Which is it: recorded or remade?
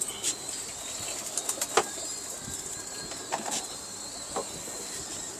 recorded